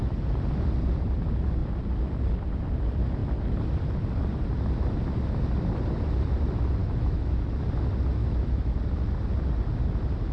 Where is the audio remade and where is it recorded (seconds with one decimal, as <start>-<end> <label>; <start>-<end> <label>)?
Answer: 0.0-6.8 recorded; 6.8-7.3 remade; 7.3-8.2 recorded; 8.2-8.8 remade; 8.8-10.3 recorded